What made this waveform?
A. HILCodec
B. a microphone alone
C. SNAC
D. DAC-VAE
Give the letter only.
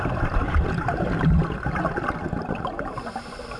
B